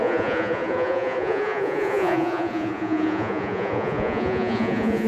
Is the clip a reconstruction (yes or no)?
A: yes